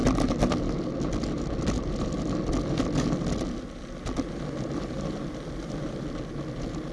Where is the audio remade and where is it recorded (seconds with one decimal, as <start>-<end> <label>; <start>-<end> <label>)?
0.0-6.9 recorded